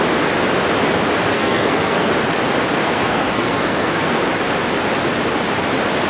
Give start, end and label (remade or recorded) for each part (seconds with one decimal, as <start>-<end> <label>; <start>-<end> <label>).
0.0-1.3 recorded; 1.3-2.1 remade; 2.1-2.8 recorded; 2.8-4.2 remade; 4.2-6.1 recorded